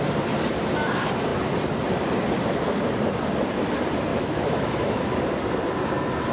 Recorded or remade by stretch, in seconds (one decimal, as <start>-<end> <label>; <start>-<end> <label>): 0.0-4.1 recorded; 4.1-5.2 remade; 5.2-6.3 recorded